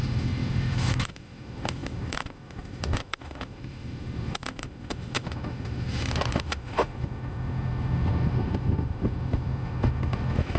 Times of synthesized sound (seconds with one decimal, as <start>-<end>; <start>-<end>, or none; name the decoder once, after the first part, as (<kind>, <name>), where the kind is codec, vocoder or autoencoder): 0.0-10.6 (autoencoder, DAC-VAE)